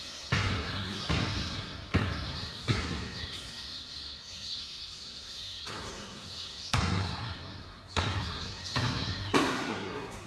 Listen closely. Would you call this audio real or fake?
fake